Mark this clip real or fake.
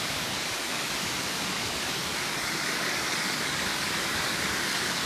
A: fake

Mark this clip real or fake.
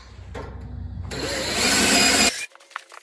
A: real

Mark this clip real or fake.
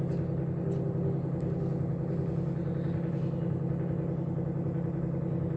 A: real